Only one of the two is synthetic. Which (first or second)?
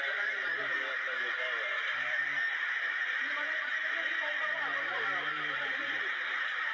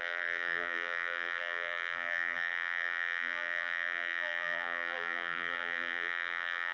second